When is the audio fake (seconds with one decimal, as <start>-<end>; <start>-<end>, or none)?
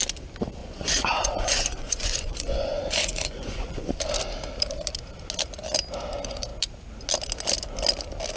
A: 0.6-4.0